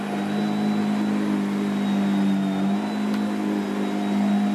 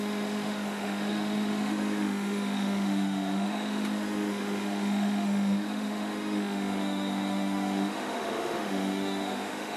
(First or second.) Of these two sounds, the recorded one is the first